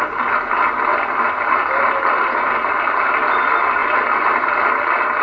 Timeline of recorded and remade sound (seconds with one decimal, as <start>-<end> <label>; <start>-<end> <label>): 0.0-5.2 recorded